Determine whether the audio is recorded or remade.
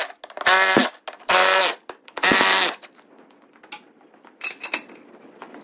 recorded